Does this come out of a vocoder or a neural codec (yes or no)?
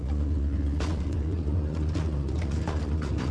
yes